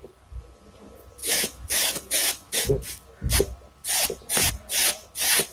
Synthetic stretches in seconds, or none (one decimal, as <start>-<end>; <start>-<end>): 1.2-2.7